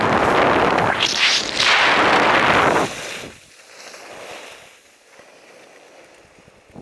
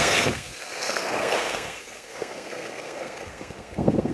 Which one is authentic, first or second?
first